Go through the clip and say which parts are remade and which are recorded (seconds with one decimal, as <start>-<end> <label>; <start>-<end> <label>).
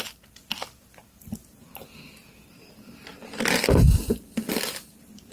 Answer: 0.0-5.3 recorded